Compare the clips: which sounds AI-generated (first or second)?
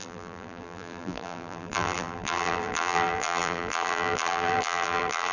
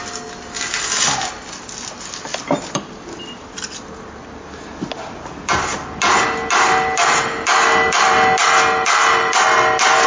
first